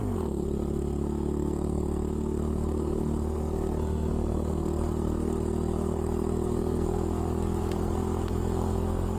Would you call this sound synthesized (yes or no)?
yes